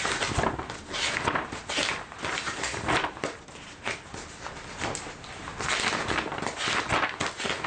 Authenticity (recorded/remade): recorded